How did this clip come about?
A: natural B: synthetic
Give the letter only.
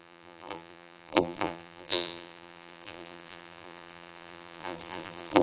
B